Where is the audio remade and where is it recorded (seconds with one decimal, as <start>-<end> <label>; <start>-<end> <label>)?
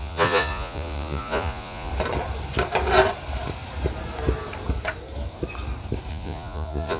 0.0-1.9 remade; 1.9-6.1 recorded; 6.1-7.0 remade